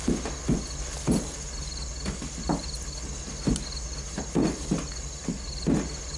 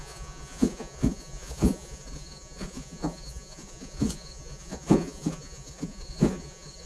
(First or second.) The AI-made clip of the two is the second